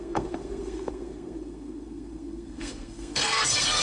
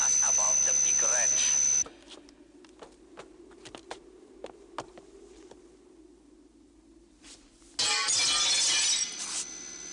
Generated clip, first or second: first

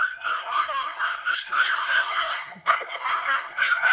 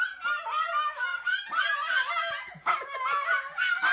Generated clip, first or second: first